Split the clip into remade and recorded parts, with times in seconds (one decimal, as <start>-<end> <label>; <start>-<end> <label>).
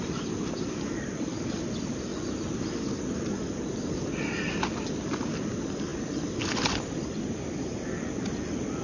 0.0-8.8 recorded